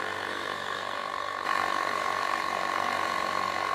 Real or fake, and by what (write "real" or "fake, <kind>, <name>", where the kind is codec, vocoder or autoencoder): fake, codec, SNAC